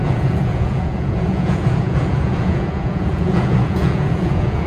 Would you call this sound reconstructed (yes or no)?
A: yes